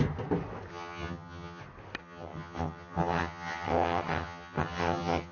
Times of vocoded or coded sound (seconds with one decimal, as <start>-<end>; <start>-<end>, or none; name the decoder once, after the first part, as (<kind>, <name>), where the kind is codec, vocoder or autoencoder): 0.7-1.6 (vocoder, HiFi-GAN); 2.0-5.3